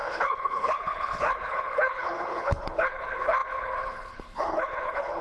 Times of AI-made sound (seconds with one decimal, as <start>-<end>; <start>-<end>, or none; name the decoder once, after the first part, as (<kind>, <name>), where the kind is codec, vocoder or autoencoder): 0.0-5.2 (codec, HILCodec)